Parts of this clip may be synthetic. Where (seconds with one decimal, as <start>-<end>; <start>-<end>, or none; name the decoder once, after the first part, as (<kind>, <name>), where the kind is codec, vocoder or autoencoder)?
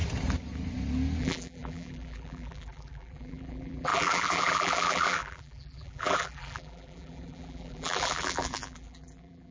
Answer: 1.2-9.5 (vocoder, BigVGAN v2)